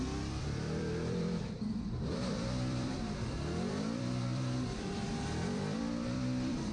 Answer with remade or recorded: remade